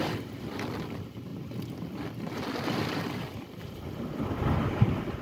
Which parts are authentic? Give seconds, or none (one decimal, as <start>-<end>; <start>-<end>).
0.0-1.3; 4.4-5.2